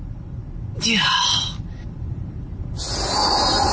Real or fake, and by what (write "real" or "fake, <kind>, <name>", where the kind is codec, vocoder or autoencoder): real